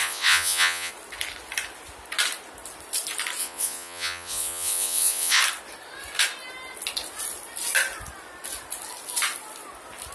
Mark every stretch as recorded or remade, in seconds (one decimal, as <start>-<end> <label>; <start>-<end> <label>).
0.0-0.9 remade; 0.9-3.4 recorded; 3.4-5.4 remade; 5.4-10.1 recorded